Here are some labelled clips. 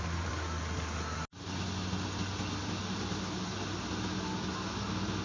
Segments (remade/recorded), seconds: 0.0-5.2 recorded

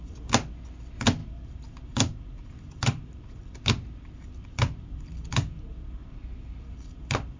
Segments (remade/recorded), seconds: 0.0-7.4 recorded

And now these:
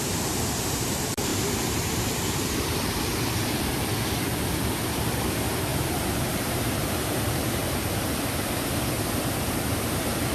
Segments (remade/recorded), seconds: 0.0-3.7 remade; 3.7-4.9 recorded; 4.9-7.6 remade; 7.6-10.3 recorded

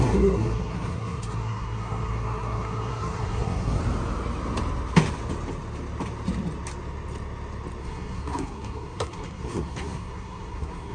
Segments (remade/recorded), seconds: 0.0-3.8 remade; 3.8-7.8 recorded; 7.8-10.9 remade

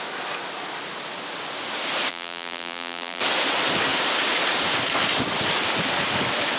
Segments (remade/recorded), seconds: 0.0-2.1 recorded; 2.1-3.2 remade; 3.2-6.6 recorded

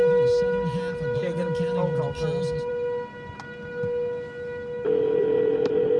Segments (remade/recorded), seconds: 0.0-6.0 recorded

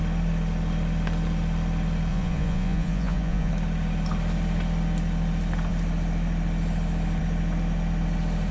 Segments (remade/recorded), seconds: 0.0-2.1 recorded; 2.1-3.5 remade; 3.5-8.5 recorded